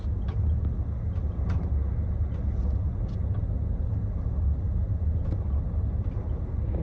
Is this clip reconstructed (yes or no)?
no